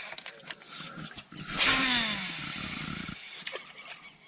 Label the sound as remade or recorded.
recorded